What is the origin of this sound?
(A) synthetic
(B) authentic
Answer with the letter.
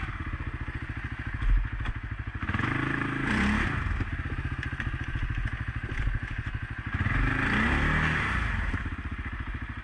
B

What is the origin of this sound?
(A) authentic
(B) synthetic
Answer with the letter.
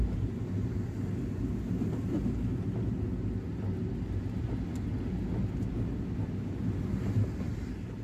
A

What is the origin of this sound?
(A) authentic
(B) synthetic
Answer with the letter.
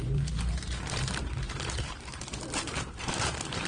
B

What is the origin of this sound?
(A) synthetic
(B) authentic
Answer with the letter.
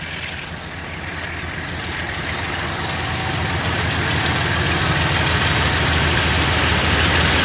B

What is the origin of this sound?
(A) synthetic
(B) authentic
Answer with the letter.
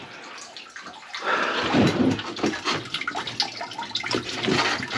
B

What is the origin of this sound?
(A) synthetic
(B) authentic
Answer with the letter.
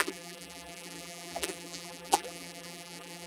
A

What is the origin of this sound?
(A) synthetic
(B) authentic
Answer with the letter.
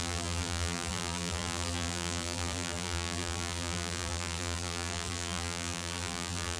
A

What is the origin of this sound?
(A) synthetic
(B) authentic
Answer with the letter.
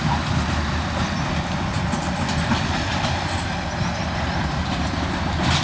A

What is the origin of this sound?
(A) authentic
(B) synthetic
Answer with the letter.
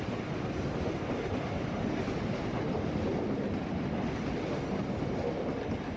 A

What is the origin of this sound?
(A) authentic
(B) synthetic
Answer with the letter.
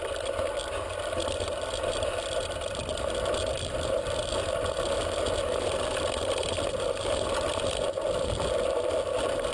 A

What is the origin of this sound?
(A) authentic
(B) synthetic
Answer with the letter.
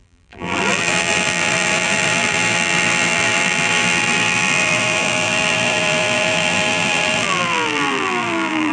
B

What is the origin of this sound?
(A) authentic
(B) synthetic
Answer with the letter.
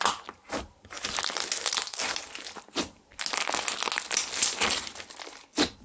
A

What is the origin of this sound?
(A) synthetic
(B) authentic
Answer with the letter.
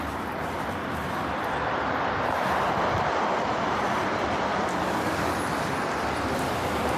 A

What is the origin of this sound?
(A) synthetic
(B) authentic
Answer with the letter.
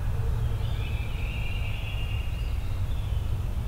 B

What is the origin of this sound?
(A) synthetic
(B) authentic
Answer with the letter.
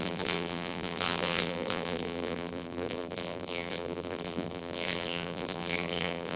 A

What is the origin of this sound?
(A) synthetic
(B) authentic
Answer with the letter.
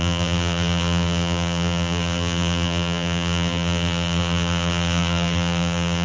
A